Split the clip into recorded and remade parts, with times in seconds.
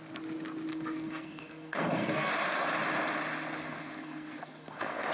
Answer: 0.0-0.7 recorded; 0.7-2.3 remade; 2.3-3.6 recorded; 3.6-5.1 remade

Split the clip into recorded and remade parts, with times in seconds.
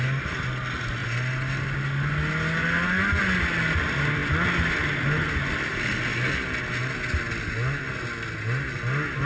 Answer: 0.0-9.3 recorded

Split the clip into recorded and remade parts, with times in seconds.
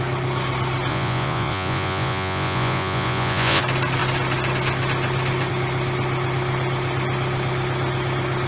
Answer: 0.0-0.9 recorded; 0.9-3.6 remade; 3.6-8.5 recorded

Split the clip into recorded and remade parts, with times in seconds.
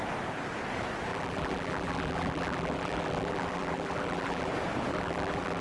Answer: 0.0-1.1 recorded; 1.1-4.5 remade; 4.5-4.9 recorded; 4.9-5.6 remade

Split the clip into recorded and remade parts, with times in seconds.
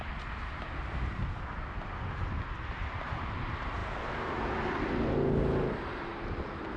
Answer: 0.0-6.8 recorded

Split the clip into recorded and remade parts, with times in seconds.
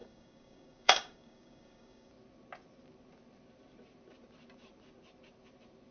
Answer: 0.0-2.1 remade; 2.1-5.9 recorded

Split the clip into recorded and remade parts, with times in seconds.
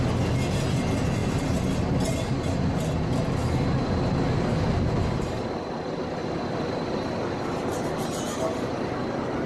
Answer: 0.0-3.4 recorded; 3.4-4.0 remade; 4.0-9.5 recorded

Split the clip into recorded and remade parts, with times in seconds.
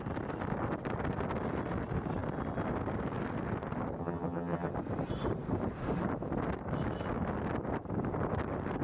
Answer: 0.0-4.0 recorded; 4.0-4.7 remade; 4.7-8.8 recorded